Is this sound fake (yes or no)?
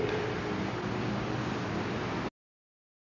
no